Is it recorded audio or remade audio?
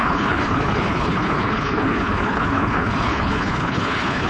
remade